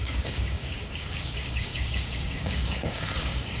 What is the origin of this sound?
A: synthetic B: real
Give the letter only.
A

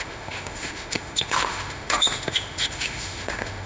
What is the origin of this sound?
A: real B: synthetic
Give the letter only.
B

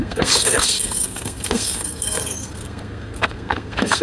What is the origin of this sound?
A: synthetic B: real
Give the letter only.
A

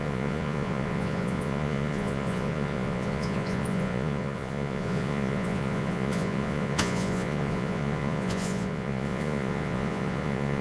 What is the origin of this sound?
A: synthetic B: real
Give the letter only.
A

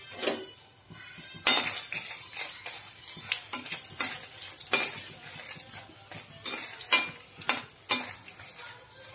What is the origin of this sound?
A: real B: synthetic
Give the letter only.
A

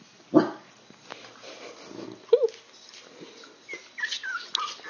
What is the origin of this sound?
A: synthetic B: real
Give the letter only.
B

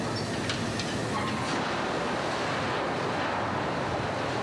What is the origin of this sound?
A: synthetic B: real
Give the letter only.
B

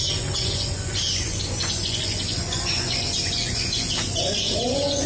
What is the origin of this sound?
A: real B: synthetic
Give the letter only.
B